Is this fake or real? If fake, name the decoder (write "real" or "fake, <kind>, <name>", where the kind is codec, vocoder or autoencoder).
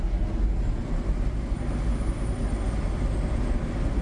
real